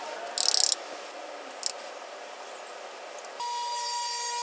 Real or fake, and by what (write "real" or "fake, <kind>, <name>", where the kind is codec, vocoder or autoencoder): real